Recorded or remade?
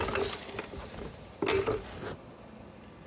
recorded